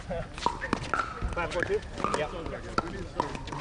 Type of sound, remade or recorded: recorded